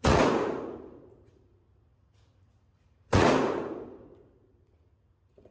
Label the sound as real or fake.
fake